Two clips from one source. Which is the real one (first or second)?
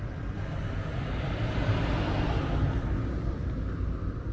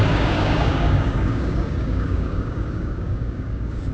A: first